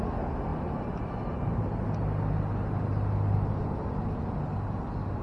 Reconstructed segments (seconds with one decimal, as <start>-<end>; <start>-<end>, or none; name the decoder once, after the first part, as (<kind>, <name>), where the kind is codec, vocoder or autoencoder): none